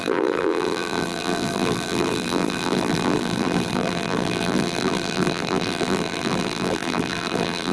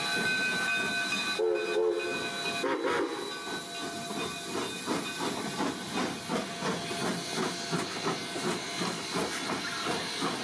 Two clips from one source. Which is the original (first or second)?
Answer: second